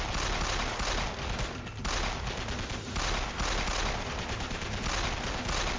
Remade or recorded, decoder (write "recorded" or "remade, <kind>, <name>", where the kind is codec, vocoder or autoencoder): recorded